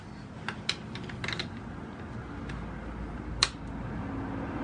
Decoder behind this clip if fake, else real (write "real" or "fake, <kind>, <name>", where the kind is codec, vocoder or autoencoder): real